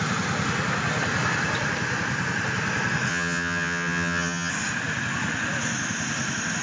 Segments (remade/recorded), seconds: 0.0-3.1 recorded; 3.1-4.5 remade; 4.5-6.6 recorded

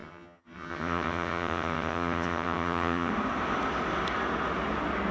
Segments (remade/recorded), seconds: 0.0-3.1 remade; 3.1-5.1 recorded

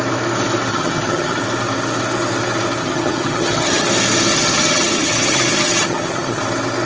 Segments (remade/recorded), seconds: 0.0-0.7 recorded; 0.7-1.4 remade; 1.4-2.8 recorded; 2.8-3.9 remade; 3.9-4.3 recorded; 4.3-6.4 remade; 6.4-6.9 recorded

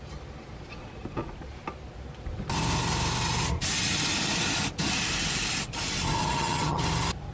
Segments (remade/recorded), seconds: 0.0-6.2 recorded; 6.2-6.8 remade; 6.8-7.3 recorded

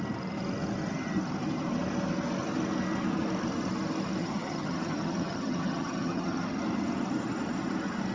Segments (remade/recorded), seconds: 0.0-4.2 recorded; 4.2-6.6 remade; 6.6-8.1 recorded

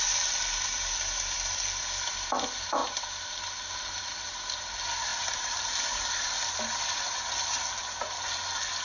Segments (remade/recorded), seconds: 0.0-8.8 recorded